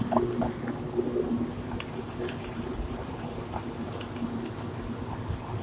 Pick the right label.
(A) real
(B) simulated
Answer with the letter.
A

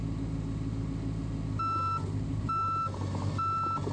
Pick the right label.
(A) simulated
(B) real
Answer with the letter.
B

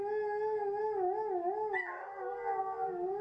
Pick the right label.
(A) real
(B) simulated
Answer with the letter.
A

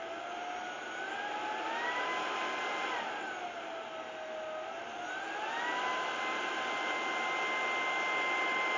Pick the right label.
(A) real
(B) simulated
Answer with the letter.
A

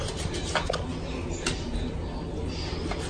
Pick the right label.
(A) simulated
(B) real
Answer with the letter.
B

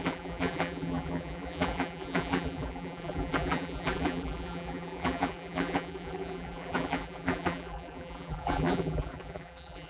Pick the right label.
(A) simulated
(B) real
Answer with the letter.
A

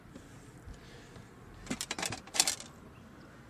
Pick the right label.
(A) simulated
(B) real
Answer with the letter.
B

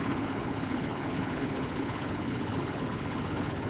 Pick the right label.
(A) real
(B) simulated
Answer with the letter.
B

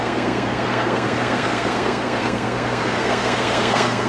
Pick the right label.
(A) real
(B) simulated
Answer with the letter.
B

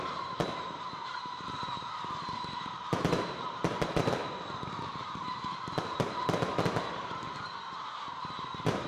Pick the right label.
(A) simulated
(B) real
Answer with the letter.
A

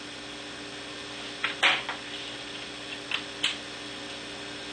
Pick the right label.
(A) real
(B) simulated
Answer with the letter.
A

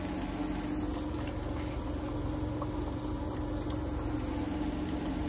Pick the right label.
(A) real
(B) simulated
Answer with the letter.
A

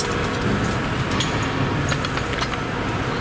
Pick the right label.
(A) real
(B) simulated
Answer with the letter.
A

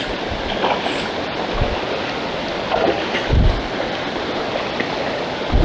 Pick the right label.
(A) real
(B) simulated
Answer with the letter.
A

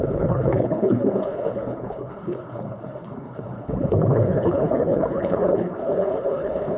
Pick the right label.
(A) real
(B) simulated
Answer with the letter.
B